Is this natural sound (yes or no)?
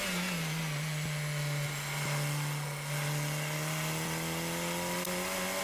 yes